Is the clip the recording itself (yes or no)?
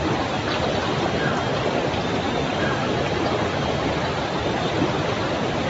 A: yes